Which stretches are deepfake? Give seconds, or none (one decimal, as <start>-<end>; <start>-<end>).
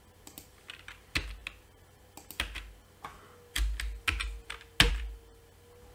none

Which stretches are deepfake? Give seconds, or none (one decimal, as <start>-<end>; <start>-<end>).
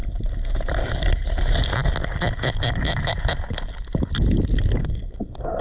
4.8-5.6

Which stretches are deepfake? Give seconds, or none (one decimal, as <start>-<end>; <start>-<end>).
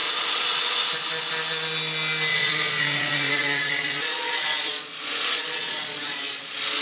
0.0-0.9; 2.3-6.8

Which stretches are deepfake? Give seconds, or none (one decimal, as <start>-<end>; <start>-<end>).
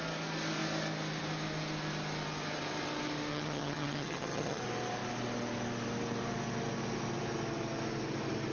3.3-4.6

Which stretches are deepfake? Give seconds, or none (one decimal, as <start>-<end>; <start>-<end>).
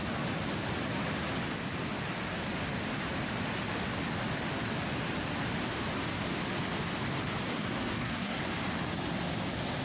7.5-8.4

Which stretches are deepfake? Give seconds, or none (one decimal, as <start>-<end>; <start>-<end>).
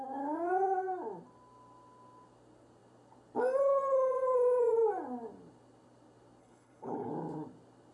6.4-7.1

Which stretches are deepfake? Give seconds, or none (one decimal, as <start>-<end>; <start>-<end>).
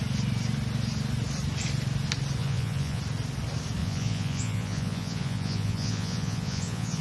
2.4-3.0; 3.8-7.0